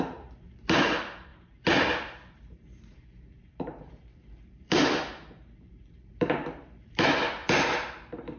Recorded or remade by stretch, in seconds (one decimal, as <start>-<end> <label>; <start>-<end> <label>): 0.0-8.4 remade

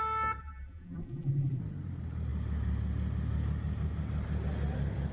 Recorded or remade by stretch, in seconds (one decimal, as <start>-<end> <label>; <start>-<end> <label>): 0.0-0.4 recorded; 0.4-1.6 remade; 1.6-5.1 recorded

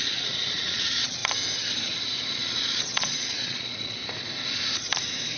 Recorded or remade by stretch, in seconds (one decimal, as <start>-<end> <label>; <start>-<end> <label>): 0.0-1.2 remade; 1.2-2.3 recorded; 2.3-4.0 remade; 4.0-5.4 recorded